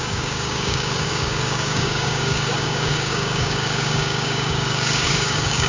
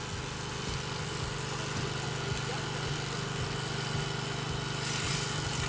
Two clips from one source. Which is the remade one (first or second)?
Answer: first